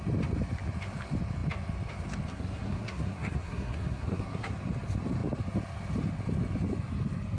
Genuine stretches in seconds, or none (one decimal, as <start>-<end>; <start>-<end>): 0.0-2.3; 4.5-7.4